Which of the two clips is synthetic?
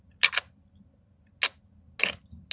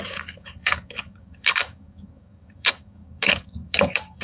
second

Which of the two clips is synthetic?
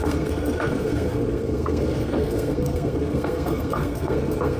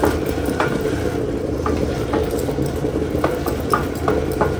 first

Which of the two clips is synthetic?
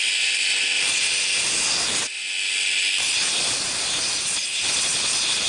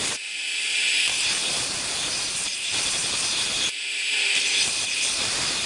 second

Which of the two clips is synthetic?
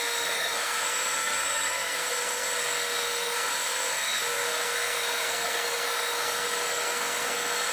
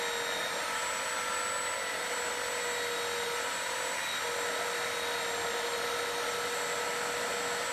first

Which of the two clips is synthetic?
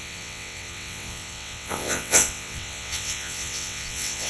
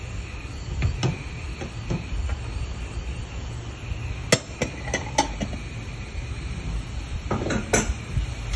first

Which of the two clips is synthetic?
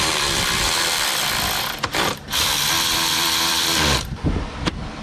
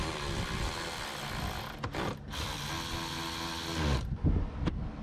first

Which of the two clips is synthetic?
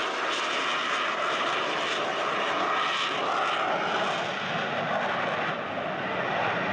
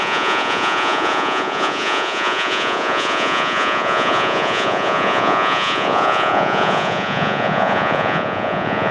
second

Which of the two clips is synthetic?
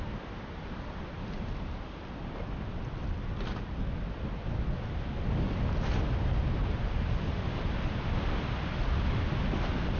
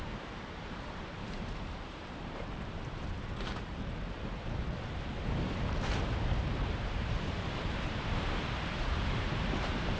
second